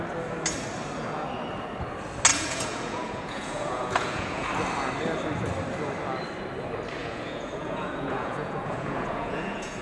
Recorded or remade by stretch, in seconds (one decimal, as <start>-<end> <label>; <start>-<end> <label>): 0.0-2.3 recorded; 2.3-4.5 remade; 4.5-7.0 recorded; 7.0-9.8 remade